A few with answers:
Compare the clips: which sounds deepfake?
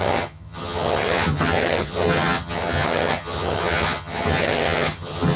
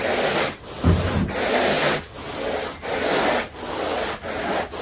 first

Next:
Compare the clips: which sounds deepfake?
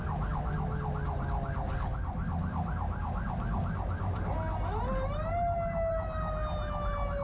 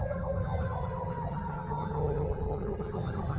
second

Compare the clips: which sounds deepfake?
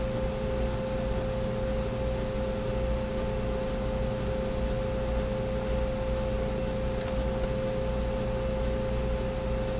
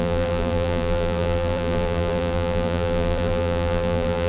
second